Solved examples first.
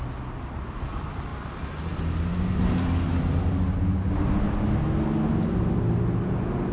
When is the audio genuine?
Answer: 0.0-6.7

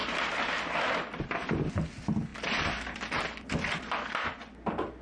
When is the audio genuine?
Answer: 0.0-5.0

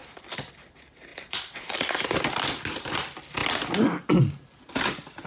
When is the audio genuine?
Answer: 0.7-1.1; 2.3-5.3